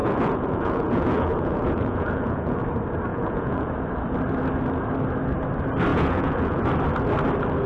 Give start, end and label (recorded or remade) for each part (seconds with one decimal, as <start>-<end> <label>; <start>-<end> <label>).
0.0-2.6 remade; 2.6-3.1 recorded; 3.1-3.7 remade; 3.7-5.9 recorded; 5.9-6.6 remade; 6.6-7.7 recorded